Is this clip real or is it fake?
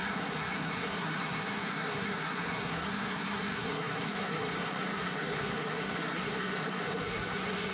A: fake